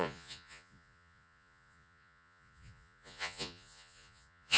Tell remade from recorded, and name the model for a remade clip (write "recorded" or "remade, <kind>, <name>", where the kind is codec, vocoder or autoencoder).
remade, vocoder, Vocos